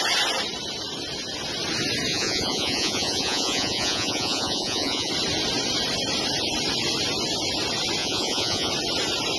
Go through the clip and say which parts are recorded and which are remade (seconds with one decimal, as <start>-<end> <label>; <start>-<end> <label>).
0.0-2.1 recorded; 2.1-5.1 remade; 5.1-8.0 recorded; 8.0-8.7 remade; 8.7-9.4 recorded

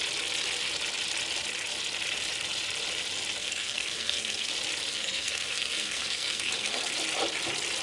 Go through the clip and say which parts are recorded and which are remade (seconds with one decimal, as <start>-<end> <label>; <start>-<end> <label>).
0.0-3.4 recorded; 3.4-4.5 remade; 4.5-4.9 recorded; 4.9-6.9 remade; 6.9-7.8 recorded

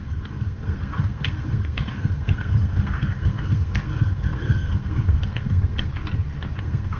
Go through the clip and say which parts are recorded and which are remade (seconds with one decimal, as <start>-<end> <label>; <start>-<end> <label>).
0.0-5.9 remade; 5.9-6.6 recorded; 6.6-7.0 remade